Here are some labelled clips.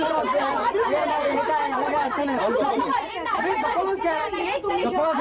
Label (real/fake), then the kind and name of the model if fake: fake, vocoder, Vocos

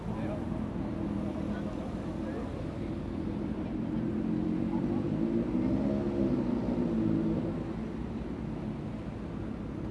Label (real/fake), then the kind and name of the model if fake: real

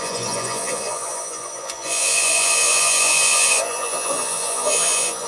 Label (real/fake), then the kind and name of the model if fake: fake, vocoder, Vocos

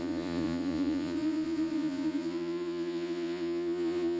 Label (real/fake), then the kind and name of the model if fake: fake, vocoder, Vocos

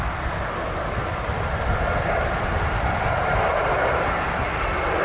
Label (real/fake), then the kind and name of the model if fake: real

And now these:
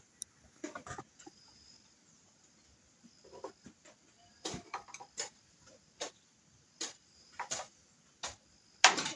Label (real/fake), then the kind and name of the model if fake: real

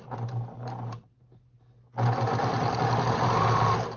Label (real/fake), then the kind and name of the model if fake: real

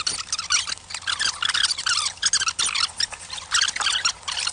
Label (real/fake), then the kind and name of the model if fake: real